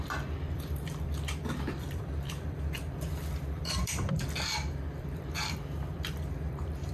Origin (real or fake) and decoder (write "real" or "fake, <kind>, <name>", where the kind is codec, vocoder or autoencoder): fake, vocoder, BigVGAN v2